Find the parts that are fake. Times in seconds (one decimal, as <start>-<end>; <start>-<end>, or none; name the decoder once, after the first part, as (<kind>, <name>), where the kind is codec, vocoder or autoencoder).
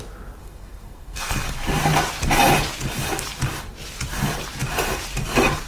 0.4-1.5 (codec, SNAC)